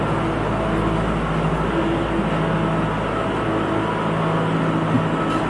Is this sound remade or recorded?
recorded